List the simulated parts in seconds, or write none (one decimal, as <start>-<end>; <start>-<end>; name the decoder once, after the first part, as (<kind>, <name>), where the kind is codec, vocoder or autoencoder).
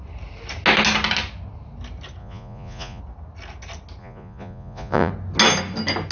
2.2-3.0 (vocoder, Vocos); 4.0-5.1